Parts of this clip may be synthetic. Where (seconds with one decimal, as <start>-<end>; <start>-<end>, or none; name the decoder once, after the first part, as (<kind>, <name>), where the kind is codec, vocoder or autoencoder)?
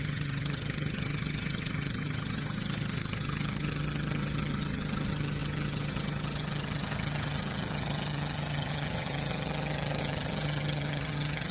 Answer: 0.0-11.5 (vocoder, HiFi-GAN)